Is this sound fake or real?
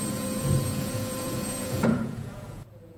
fake